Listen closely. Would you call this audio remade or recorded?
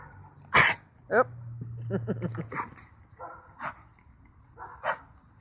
recorded